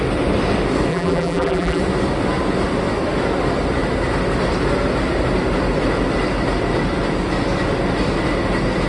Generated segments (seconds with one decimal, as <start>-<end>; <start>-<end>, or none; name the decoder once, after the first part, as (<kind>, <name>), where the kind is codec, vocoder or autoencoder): 0.9-1.8 (vocoder, BigVGAN v2)